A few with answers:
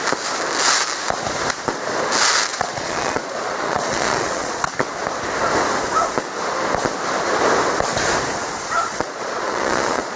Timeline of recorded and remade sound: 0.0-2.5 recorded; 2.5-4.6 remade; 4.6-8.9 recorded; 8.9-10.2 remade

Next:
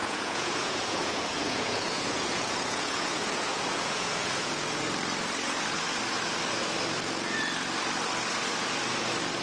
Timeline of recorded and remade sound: 0.0-4.8 remade; 4.8-9.4 recorded